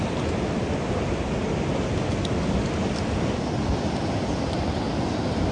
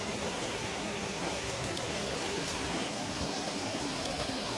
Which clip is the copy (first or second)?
second